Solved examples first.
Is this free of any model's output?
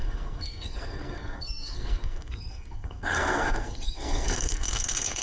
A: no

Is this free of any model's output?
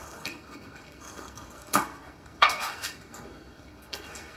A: no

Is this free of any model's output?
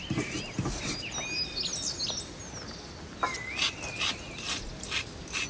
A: yes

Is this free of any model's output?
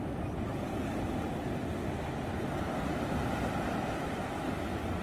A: yes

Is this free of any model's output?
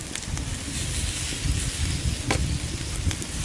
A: yes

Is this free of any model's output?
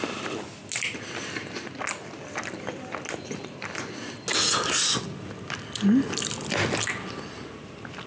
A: yes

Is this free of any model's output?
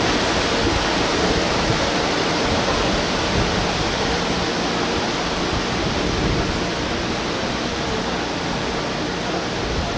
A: yes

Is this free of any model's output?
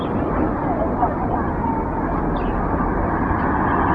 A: yes